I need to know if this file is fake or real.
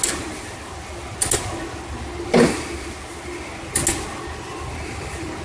real